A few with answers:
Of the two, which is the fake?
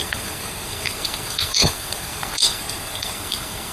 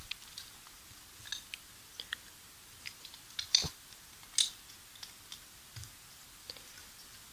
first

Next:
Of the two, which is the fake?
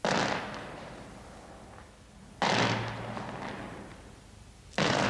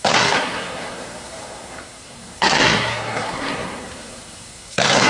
second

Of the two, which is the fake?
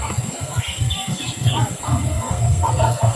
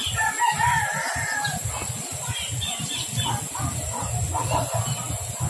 first